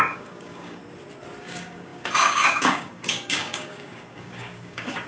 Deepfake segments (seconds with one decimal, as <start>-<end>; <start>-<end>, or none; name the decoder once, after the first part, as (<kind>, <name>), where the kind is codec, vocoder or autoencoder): 0.0-0.8 (codec, DAC); 1.4-5.1